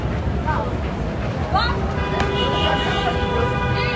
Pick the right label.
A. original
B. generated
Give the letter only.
A